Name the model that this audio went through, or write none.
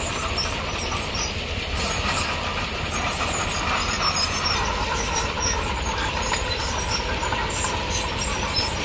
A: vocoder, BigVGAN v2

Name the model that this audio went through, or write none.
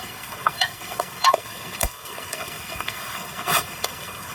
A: codec, SNAC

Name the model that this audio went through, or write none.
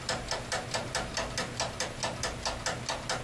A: none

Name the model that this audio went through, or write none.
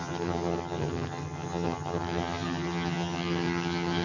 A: vocoder, HiFi-GAN